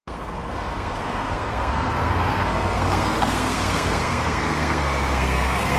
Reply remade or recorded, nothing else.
remade